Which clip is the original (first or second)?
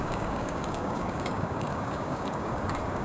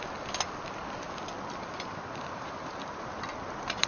second